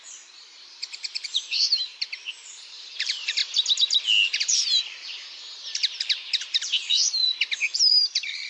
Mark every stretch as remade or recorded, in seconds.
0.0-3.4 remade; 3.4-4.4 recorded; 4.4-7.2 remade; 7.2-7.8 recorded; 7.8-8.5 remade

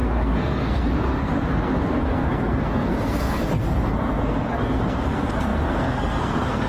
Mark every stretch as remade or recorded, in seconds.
0.0-6.7 remade

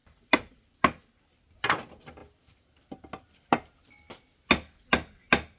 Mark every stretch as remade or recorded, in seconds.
0.0-5.6 recorded

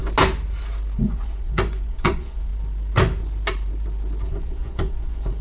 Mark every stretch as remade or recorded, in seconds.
0.0-1.0 recorded; 1.0-2.5 remade; 2.5-4.3 recorded; 4.3-5.4 remade

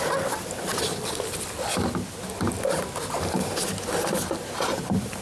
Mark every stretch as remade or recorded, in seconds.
0.0-5.2 recorded

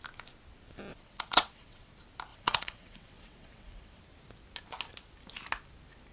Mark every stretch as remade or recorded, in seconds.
0.0-0.9 recorded; 0.9-1.9 remade; 1.9-2.3 recorded; 2.3-4.0 remade; 4.0-6.1 recorded

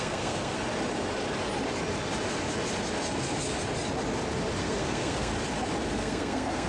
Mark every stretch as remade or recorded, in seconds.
0.0-0.6 remade; 0.6-4.6 recorded; 4.6-5.3 remade; 5.3-5.9 recorded; 5.9-6.7 remade